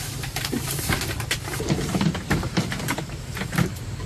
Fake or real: fake